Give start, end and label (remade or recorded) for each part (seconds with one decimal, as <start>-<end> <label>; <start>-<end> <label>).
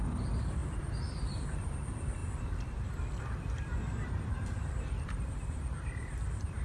0.0-0.6 remade; 0.6-1.2 recorded; 1.2-6.6 remade